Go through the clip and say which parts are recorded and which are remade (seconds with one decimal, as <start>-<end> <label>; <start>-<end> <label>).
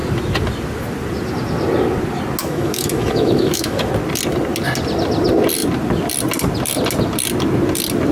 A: 0.0-2.4 recorded; 2.4-3.9 remade; 3.9-8.1 recorded